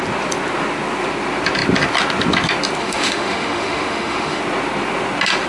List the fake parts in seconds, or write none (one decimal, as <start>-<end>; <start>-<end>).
2.8-4.4